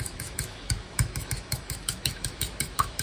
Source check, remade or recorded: remade